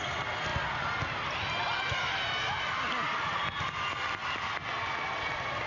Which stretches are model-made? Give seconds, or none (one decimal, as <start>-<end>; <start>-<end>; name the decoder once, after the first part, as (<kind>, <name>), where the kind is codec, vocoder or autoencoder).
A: none